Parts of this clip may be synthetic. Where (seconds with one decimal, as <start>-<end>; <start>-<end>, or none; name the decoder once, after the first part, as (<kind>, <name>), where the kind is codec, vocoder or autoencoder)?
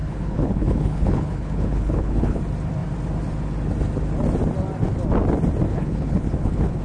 0.0-2.4 (codec, HILCodec); 5.7-6.8